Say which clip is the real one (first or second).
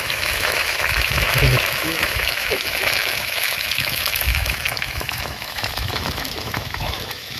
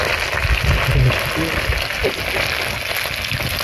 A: second